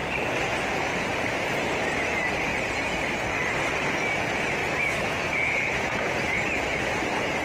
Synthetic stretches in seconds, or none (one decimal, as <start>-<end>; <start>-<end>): 4.6-6.5